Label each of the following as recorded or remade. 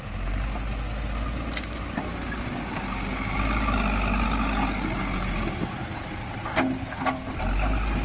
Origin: recorded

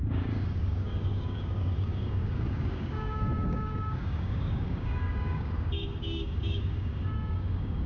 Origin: remade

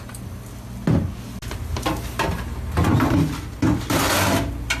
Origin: recorded